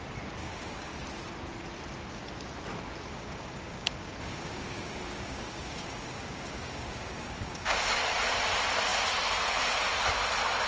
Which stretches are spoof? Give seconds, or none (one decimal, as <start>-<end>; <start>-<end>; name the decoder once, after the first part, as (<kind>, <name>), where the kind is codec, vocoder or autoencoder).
0.4-1.0 (codec, DAC); 3.1-8.0

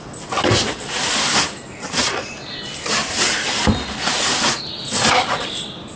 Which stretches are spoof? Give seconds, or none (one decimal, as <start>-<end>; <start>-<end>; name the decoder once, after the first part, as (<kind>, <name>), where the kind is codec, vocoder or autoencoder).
none